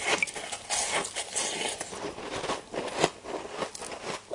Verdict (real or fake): real